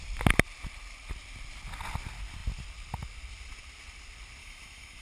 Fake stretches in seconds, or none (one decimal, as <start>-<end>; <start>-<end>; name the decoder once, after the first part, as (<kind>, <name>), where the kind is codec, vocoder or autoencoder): 4.4-5.0 (autoencoder, DAC-VAE)